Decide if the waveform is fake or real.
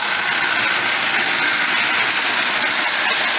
real